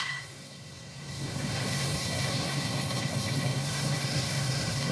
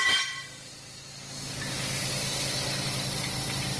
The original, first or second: second